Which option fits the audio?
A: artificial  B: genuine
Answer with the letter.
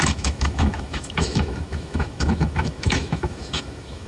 A